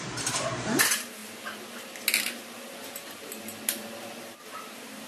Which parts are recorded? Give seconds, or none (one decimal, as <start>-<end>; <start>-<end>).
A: 1.2-4.2